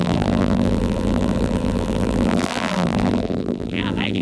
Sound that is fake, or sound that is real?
fake